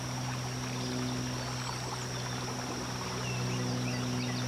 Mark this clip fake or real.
real